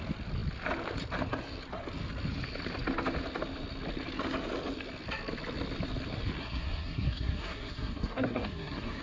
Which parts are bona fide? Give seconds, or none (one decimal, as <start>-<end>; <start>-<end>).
0.0-6.4